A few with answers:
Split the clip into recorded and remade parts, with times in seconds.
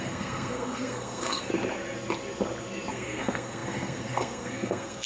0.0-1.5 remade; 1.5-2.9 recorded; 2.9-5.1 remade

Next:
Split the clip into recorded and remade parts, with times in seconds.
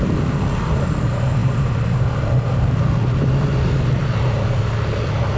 0.0-5.4 recorded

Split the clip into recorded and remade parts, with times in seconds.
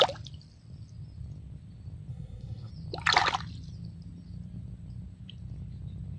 0.0-2.1 recorded; 2.1-2.7 remade; 2.7-6.2 recorded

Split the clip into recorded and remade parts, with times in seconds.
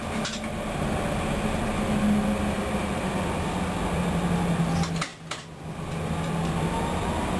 0.0-7.4 recorded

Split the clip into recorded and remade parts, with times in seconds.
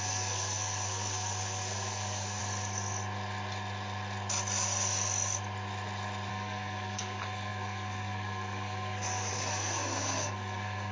0.0-2.4 remade; 2.4-6.3 recorded; 6.3-10.9 remade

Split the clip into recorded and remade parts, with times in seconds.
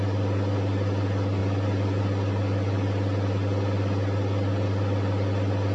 0.0-5.7 recorded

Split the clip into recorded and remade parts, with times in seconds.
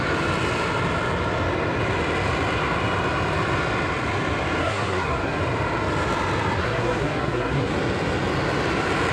0.0-4.6 recorded; 4.6-5.4 remade; 5.4-6.6 recorded; 6.6-7.7 remade; 7.7-9.1 recorded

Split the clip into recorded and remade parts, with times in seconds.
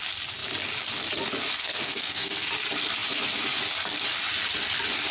0.0-1.6 recorded; 1.6-2.5 remade; 2.5-5.1 recorded